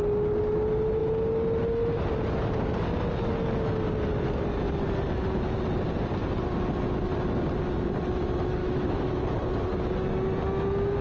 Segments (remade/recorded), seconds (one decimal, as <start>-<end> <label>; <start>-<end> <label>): 0.0-8.6 recorded; 8.6-9.2 remade; 9.2-11.0 recorded